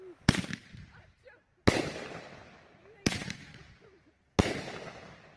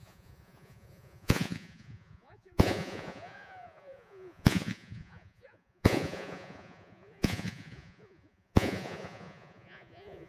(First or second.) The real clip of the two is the first